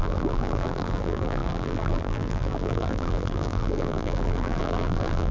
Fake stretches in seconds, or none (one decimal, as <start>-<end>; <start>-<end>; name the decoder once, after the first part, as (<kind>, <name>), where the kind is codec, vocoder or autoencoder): 0.0-5.3 (vocoder, BigVGAN v2)